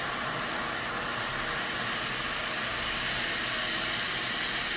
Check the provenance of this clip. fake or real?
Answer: real